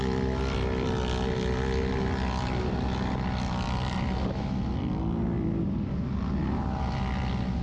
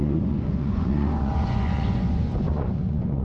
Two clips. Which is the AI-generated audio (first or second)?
second